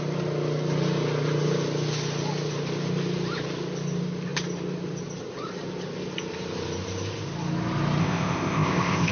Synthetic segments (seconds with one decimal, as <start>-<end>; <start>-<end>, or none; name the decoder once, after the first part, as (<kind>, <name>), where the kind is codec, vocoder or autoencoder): 8.0-9.1 (codec, ZipCodec)